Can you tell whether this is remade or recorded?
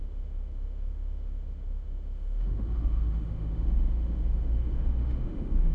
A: remade